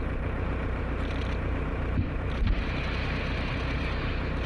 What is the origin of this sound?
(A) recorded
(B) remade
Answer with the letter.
A